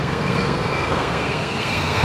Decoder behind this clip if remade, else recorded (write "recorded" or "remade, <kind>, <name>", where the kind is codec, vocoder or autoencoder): remade, codec, SNAC